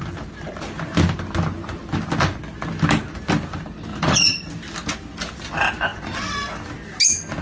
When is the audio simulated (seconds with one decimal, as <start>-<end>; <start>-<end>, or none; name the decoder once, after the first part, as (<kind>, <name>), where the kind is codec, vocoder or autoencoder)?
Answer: 3.9-4.5 (vocoder, Vocos)